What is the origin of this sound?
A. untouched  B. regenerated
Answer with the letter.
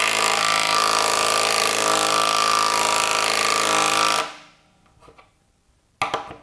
A